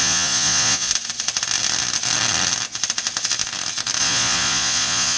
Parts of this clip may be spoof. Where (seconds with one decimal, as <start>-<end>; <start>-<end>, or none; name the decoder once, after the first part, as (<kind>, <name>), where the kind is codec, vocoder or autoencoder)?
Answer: 0.0-0.9 (vocoder, Vocos); 4.0-5.2